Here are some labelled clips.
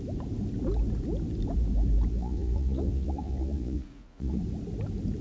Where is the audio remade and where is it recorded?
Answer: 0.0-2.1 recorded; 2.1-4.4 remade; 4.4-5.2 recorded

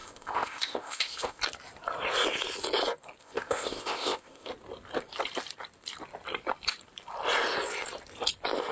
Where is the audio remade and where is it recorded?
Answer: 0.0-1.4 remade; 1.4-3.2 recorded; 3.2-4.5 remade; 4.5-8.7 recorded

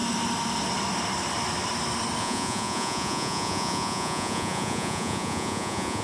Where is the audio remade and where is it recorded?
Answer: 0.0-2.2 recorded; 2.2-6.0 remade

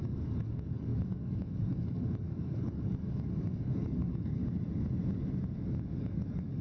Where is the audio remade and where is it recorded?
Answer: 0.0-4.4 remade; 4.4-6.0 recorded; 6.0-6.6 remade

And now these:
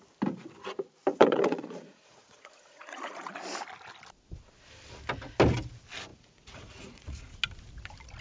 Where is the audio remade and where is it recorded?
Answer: 0.0-1.1 recorded; 1.1-3.3 remade; 3.3-6.1 recorded; 6.1-7.2 remade; 7.2-8.2 recorded

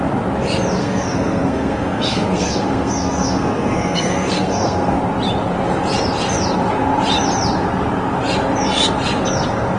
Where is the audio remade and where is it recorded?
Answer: 0.0-0.8 recorded; 0.8-5.0 remade; 5.0-9.8 recorded